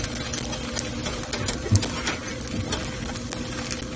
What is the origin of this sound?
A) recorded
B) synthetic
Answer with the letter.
A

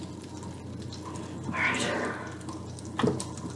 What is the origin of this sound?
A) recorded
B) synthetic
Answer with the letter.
A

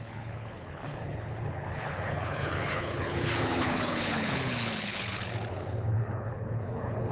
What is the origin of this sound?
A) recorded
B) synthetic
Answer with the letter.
B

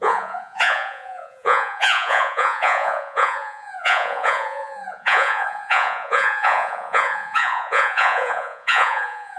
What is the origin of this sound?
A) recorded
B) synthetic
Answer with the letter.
B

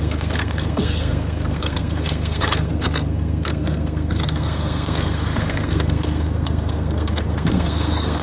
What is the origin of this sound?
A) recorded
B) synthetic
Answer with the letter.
B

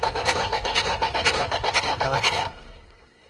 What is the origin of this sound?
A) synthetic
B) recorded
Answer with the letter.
A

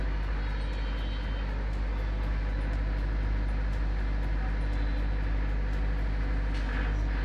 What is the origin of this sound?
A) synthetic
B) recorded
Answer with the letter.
B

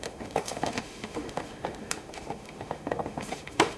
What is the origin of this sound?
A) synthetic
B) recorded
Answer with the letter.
A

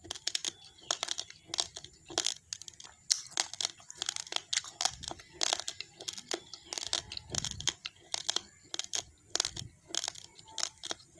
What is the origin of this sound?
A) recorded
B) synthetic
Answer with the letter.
A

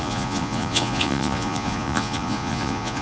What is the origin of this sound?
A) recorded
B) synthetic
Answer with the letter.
B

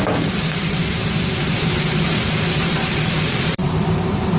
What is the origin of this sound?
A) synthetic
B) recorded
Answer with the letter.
A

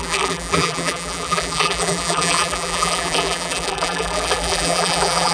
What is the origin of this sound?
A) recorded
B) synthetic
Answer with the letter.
B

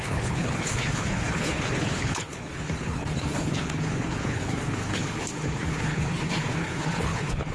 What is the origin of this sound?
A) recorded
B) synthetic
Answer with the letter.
B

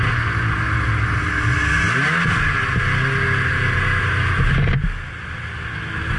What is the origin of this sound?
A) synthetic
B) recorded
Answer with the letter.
B